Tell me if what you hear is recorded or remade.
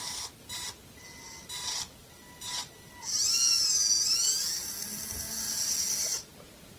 recorded